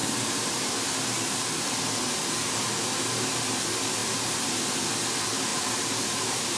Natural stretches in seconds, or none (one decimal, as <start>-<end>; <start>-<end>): 0.7-4.0; 4.5-5.5

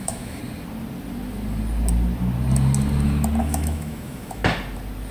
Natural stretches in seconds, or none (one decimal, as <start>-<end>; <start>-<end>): 0.4-3.4; 4.4-5.1

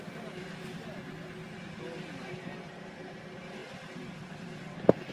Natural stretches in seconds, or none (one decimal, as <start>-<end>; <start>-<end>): 0.0-5.1

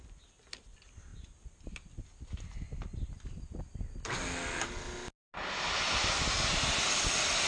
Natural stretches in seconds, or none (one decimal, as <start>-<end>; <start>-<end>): 0.0-7.5

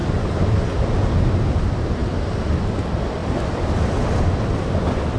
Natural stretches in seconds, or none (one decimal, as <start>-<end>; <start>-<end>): 0.0-5.2

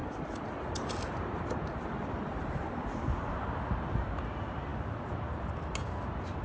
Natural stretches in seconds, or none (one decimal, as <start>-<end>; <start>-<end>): 0.0-6.4

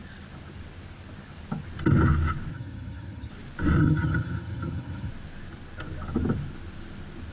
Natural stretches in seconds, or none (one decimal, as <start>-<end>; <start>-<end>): 0.0-2.5; 3.3-3.8; 5.1-7.3

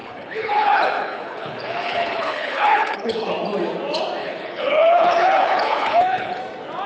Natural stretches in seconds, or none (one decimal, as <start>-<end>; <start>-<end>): 3.3-4.2; 6.4-6.9